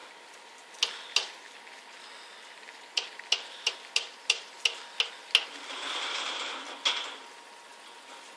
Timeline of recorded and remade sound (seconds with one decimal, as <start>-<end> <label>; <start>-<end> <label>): 0.0-8.4 recorded

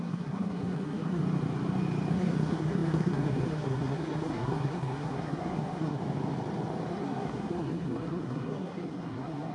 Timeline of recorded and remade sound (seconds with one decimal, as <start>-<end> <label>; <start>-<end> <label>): 0.0-1.2 remade; 1.2-2.1 recorded; 2.1-6.0 remade; 6.0-6.9 recorded; 6.9-9.5 remade

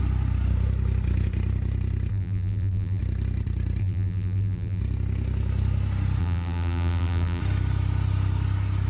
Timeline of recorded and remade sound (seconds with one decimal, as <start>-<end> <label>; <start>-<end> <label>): 0.0-2.1 recorded; 2.1-3.0 remade; 3.0-3.8 recorded; 3.8-4.8 remade; 4.8-6.2 recorded; 6.2-7.4 remade; 7.4-8.9 recorded

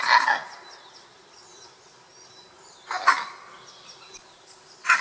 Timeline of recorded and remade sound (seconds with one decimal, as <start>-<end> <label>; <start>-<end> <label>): 0.0-5.0 recorded

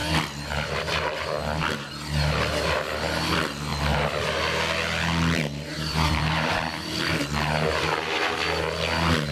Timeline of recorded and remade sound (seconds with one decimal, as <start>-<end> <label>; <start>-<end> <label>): 0.0-5.7 recorded; 5.7-7.2 remade; 7.2-9.3 recorded